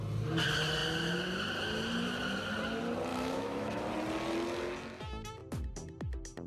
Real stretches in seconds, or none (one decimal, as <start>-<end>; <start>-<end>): 0.0-3.1; 3.8-6.5